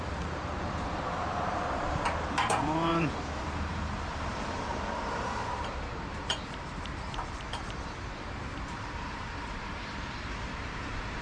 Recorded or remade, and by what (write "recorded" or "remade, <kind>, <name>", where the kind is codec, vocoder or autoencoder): remade, vocoder, BigVGAN v2